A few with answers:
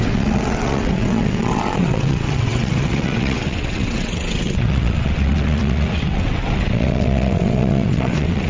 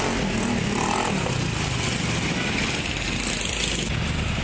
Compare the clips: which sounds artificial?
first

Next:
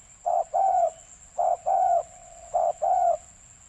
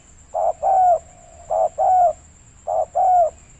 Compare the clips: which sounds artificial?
first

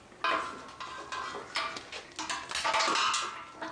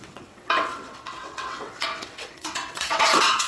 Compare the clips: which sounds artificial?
second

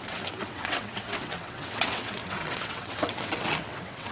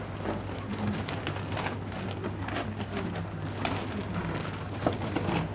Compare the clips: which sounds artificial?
first